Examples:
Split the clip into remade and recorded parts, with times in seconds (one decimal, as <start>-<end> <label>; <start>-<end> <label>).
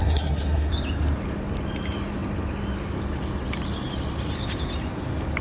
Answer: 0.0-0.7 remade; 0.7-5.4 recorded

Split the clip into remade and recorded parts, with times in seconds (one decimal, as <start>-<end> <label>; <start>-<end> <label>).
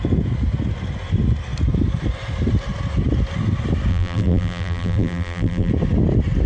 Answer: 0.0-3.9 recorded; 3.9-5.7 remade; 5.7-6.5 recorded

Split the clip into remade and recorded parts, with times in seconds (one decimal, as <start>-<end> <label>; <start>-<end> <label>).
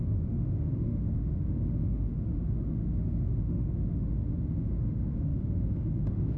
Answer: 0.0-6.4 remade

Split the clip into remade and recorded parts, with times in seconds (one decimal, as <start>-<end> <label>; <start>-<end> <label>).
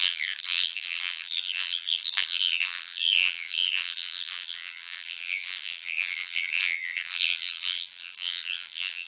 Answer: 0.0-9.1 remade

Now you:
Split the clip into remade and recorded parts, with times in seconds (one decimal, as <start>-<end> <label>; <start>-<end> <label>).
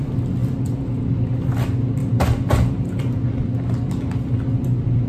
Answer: 0.0-5.1 recorded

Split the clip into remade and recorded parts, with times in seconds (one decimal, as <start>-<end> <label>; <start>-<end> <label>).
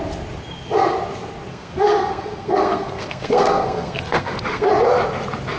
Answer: 0.0-1.5 recorded; 1.5-4.7 remade; 4.7-5.6 recorded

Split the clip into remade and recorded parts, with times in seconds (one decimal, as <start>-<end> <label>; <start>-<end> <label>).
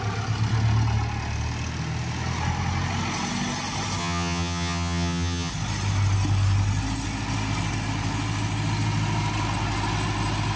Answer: 0.0-4.0 recorded; 4.0-5.5 remade; 5.5-10.6 recorded